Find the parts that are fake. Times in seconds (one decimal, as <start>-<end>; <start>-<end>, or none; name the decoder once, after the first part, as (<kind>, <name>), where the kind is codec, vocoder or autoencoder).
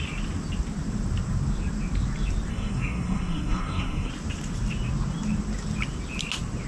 2.5-4.1 (codec, SNAC)